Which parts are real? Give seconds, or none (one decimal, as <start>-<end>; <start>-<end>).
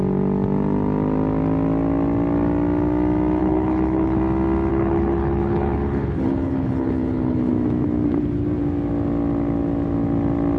0.0-3.4; 4.2-4.7; 7.5-10.6